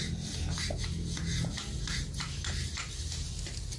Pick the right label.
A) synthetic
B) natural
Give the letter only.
B